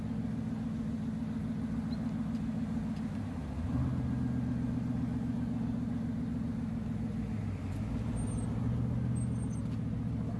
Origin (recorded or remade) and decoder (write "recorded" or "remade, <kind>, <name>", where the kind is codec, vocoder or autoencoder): recorded